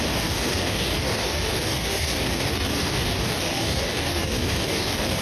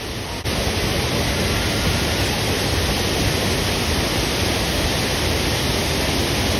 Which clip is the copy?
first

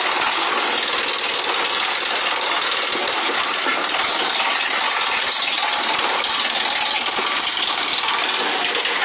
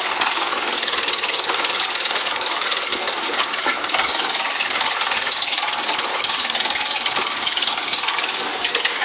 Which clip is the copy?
second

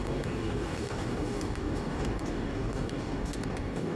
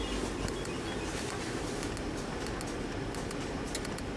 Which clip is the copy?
first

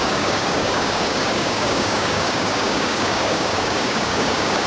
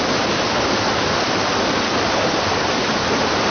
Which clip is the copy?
first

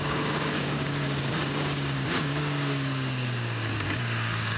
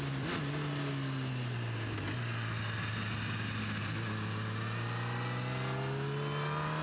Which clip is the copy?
first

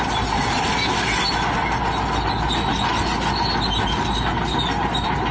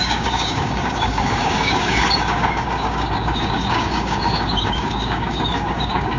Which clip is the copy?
second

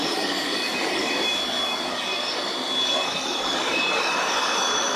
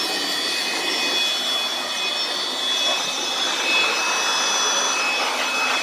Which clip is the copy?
first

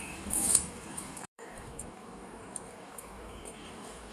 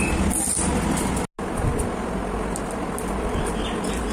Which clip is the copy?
first